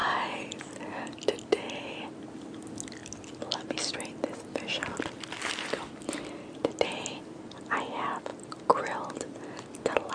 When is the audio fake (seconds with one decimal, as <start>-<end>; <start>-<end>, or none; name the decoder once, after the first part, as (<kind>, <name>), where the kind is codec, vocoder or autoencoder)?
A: 0.0-0.6 (vocoder, BigVGAN v2); 8.3-9.6